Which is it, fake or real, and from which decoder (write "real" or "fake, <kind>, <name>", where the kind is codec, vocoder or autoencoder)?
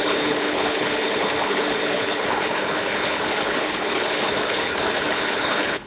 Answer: fake, codec, HILCodec